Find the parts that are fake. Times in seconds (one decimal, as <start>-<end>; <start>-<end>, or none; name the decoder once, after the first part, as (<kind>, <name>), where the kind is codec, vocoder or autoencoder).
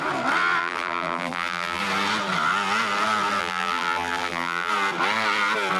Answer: 0.6-1.8 (vocoder, BigVGAN v2); 3.4-4.7